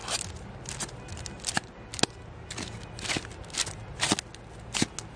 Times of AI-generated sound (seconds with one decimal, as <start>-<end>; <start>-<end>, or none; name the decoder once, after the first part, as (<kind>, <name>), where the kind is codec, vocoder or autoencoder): none